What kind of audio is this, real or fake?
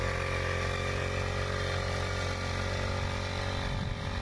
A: real